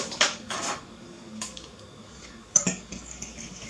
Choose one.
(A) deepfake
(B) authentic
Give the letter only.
A